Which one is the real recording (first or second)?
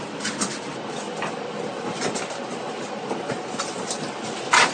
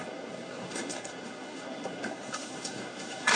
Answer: first